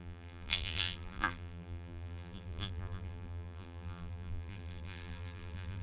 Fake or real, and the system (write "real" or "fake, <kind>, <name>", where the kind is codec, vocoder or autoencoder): fake, vocoder, BigVGAN v2